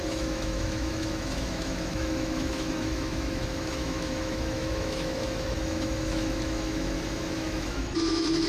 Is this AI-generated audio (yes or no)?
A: yes